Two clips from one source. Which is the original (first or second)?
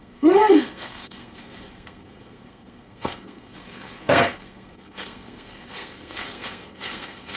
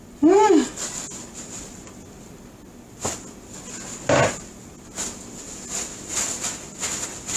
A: second